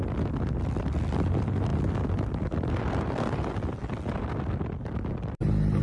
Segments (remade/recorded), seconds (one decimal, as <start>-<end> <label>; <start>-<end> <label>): 0.0-5.8 recorded